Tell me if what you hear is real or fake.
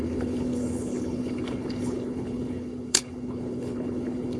fake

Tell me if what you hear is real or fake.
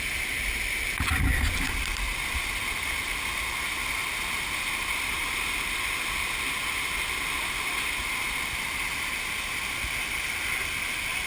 real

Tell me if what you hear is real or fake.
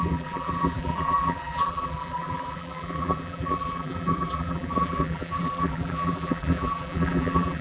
fake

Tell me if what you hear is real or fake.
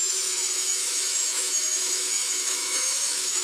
fake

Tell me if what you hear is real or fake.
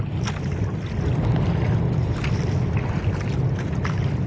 real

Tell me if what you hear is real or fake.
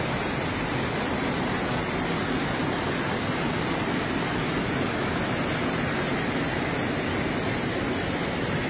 real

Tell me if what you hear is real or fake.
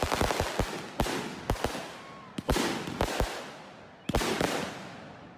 real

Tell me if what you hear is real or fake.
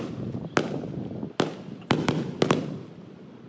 real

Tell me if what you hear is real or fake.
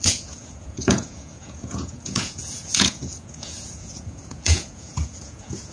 fake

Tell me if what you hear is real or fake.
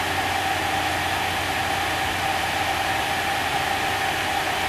real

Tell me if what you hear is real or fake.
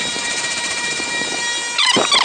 fake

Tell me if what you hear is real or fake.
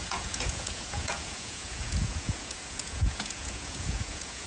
fake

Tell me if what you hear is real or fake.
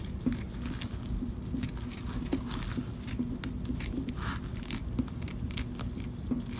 real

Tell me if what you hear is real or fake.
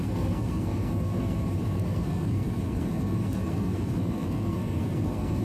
fake